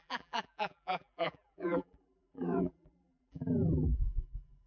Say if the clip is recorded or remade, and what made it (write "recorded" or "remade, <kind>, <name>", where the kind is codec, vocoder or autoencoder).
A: remade, vocoder, BigVGAN v2